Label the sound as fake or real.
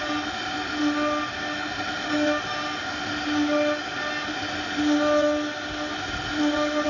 real